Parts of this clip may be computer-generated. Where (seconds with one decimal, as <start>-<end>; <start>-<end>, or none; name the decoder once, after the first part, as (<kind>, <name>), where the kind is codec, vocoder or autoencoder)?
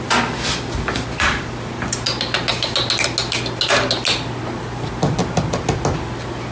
none